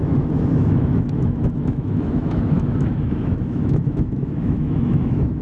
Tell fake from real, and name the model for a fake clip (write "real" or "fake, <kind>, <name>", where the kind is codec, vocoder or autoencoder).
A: fake, autoencoder, DAC-VAE